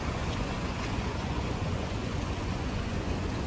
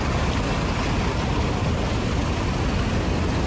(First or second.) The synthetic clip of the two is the first